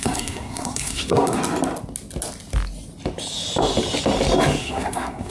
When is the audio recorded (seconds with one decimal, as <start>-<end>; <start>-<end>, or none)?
1.4-4.6